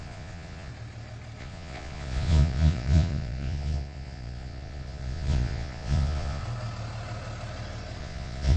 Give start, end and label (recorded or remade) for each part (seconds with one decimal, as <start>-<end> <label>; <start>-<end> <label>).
0.0-0.7 remade; 0.7-1.4 recorded; 1.4-6.4 remade; 6.4-8.0 recorded; 8.0-8.6 remade